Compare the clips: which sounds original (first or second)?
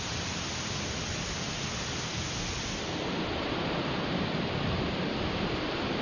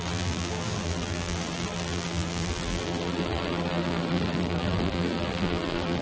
first